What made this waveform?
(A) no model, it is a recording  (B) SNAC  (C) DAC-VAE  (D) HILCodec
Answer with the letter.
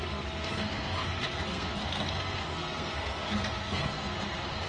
B